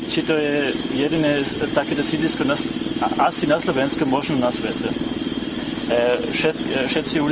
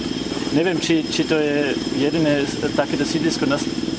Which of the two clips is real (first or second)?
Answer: first